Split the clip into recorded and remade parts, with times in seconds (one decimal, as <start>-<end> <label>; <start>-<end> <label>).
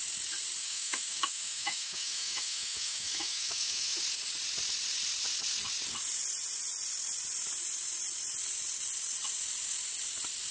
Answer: 0.0-0.6 recorded; 0.6-4.0 remade; 4.0-10.5 recorded